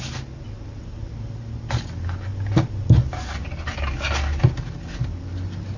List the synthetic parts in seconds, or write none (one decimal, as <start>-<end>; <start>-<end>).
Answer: none

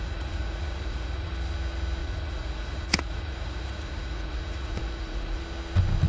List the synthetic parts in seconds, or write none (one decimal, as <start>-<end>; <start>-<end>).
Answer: 0.0-1.3; 2.0-5.4

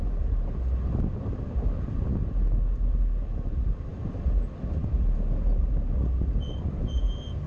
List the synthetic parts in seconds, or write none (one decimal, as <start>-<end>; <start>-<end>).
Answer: none

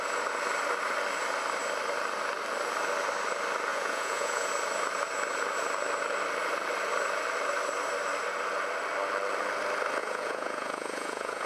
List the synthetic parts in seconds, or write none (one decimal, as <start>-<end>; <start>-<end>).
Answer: 3.7-4.5; 10.0-11.5

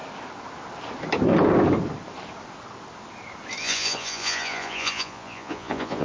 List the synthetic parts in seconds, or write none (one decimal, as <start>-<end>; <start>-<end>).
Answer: 3.6-6.0

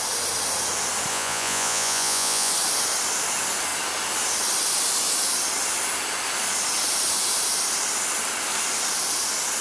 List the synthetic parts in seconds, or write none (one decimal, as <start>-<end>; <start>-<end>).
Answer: 1.1-2.5